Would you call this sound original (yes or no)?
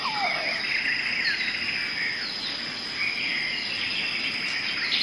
yes